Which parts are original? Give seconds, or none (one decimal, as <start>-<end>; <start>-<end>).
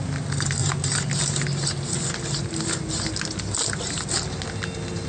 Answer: 0.0-5.1